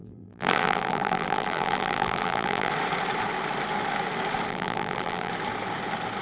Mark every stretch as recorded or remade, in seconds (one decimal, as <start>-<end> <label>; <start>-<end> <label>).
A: 0.0-2.7 remade; 2.7-4.5 recorded; 4.5-5.3 remade; 5.3-6.2 recorded